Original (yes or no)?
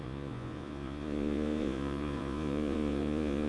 no